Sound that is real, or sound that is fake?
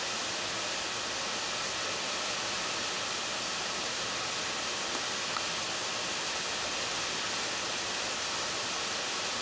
real